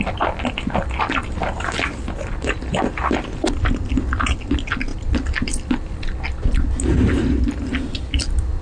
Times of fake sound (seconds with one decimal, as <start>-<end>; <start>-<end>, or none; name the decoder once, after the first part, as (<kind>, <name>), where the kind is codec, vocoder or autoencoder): none